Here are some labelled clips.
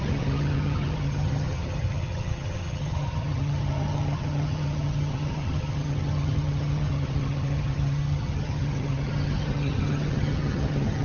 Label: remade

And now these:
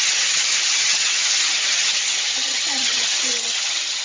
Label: remade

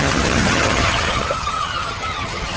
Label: remade